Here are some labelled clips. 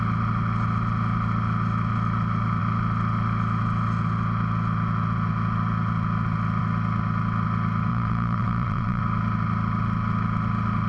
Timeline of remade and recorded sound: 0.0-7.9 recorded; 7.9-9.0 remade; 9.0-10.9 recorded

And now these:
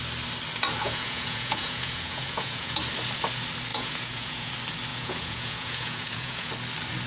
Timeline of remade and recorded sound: 0.0-0.8 recorded; 0.8-2.8 remade; 2.8-3.7 recorded; 3.7-4.5 remade; 4.5-4.9 recorded; 4.9-6.5 remade; 6.5-7.1 recorded

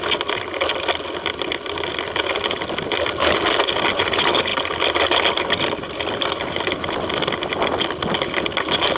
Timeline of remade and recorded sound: 0.0-9.0 recorded